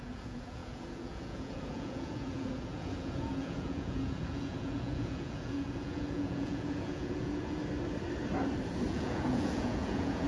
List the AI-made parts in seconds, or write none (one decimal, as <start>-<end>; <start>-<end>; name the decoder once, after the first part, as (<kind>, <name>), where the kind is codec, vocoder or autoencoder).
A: 0.0-7.6 (vocoder, Vocos); 8.9-10.3

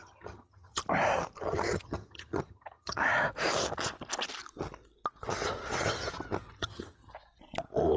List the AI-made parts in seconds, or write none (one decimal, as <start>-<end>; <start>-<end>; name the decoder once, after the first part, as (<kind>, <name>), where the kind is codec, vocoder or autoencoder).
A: 0.0-0.8 (vocoder, HiFi-GAN); 1.4-3.0; 6.6-7.0